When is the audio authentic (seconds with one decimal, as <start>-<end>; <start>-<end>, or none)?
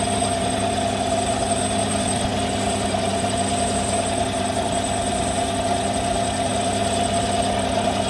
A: 0.0-8.1